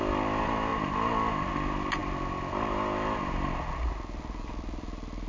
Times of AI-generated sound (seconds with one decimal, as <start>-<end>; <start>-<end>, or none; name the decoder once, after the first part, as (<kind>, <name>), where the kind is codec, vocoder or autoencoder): none